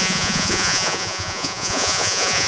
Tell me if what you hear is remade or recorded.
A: remade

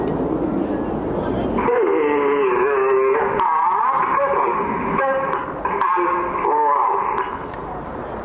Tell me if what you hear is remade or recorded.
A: recorded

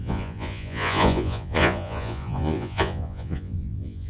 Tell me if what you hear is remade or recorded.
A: remade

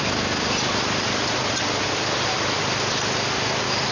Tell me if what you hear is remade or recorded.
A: recorded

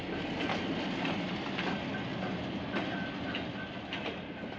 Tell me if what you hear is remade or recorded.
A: recorded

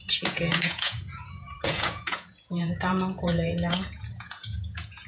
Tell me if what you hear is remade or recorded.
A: remade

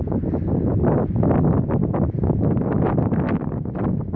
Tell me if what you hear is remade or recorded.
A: recorded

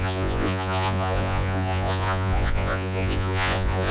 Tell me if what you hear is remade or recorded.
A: remade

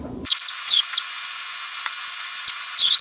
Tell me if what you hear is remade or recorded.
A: remade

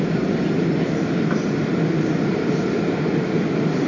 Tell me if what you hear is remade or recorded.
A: recorded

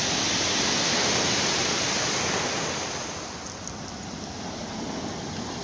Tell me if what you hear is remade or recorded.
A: recorded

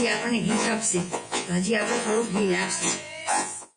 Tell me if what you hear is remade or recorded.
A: remade